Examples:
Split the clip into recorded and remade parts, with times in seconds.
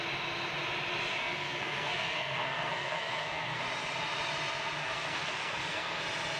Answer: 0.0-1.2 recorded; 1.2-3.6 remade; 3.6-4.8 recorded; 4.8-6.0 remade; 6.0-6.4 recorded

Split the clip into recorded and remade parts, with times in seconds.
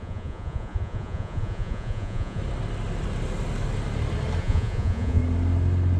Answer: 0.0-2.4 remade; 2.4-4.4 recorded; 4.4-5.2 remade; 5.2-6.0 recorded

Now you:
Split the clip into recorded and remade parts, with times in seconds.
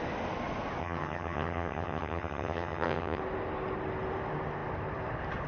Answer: 0.0-0.8 recorded; 0.8-3.2 remade; 3.2-5.5 recorded